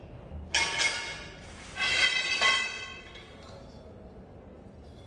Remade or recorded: recorded